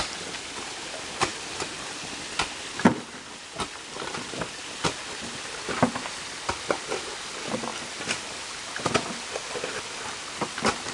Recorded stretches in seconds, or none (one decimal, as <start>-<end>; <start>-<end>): 0.0-7.7; 8.4-10.9